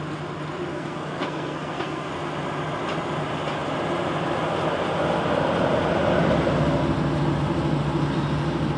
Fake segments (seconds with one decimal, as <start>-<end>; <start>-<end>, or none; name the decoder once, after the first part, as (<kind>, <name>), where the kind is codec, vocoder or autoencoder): 0.7-2.1 (codec, SNAC)